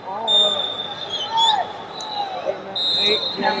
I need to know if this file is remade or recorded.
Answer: recorded